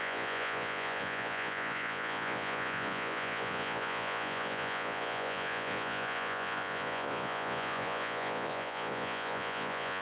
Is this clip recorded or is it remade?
remade